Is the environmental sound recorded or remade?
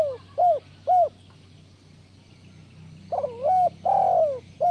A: recorded